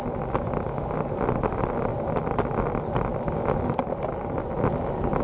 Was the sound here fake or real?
real